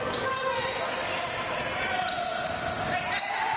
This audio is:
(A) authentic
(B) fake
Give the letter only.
A